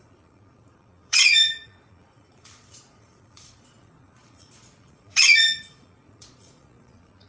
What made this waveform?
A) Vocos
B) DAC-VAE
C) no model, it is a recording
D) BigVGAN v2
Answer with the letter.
A